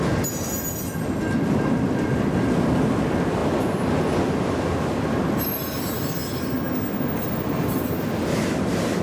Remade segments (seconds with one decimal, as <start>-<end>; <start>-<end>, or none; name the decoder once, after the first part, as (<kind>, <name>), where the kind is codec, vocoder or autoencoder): none